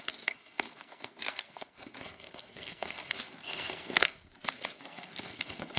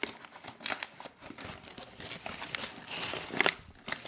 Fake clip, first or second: first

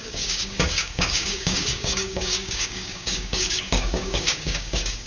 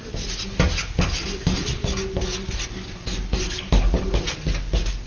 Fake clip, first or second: first